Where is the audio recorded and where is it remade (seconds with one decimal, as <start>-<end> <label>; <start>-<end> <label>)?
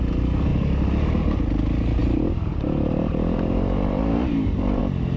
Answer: 0.0-2.0 recorded; 2.0-4.8 remade; 4.8-5.2 recorded